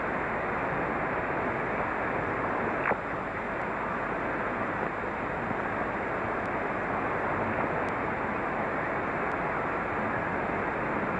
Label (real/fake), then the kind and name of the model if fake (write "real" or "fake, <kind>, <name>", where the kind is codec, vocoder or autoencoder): real